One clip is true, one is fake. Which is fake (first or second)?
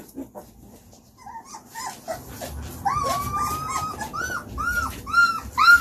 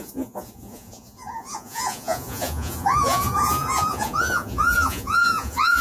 second